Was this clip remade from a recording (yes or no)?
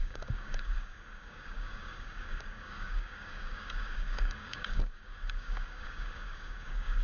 yes